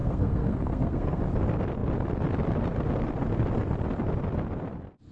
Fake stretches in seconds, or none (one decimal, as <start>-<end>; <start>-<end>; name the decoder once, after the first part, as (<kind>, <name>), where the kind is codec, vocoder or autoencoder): 0.0-1.2 (codec, SNAC)

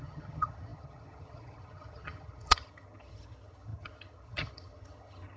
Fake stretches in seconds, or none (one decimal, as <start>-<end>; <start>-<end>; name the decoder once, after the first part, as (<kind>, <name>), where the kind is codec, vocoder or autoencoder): 0.0-5.4 (vocoder, HiFi-GAN)

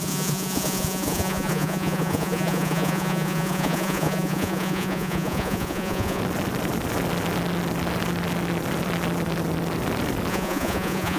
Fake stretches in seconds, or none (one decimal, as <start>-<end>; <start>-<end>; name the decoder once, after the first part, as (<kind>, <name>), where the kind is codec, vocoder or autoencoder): 0.0-6.2 (vocoder, Vocos); 10.3-11.2

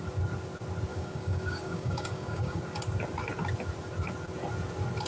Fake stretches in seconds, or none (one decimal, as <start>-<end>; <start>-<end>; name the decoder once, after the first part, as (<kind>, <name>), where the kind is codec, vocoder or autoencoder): 0.9-2.6 (codec, DAC)

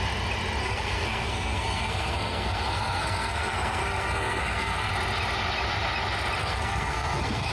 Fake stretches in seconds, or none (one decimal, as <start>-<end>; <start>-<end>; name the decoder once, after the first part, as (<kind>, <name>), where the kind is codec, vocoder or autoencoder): 0.6-4.9 (codec, SNAC); 6.4-7.5

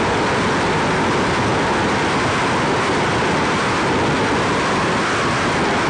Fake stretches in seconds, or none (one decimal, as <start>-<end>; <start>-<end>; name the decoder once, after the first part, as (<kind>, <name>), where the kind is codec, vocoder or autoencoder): none

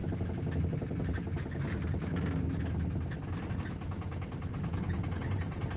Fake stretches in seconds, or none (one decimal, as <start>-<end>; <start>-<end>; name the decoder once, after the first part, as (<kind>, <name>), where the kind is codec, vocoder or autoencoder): none